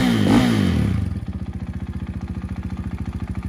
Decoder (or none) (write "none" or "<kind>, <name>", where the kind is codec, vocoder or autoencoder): none